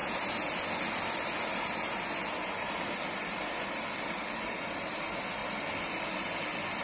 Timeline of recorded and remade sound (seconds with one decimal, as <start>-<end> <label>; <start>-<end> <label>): 0.0-6.8 recorded